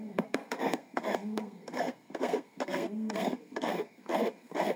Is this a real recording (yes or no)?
no